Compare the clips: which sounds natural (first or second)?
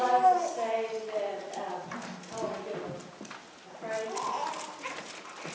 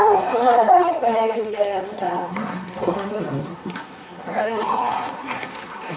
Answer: first